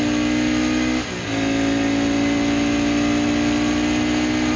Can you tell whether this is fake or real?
real